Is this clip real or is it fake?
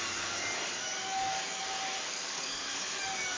fake